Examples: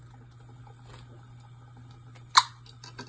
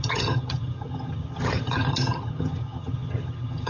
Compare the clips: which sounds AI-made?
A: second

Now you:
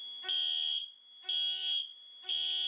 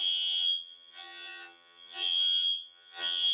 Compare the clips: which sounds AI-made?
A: second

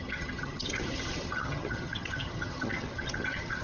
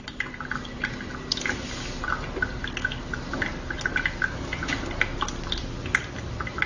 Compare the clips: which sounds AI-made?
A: first